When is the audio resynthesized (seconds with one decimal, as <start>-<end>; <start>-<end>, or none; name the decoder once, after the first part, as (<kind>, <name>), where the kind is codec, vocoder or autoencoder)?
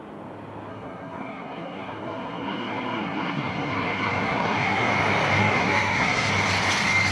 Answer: 0.7-4.9 (codec, SNAC); 5.4-6.3